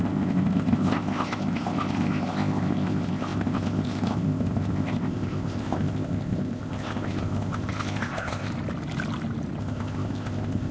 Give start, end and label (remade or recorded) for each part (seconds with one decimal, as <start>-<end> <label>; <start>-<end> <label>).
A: 0.0-8.5 remade; 8.5-9.6 recorded; 9.6-10.7 remade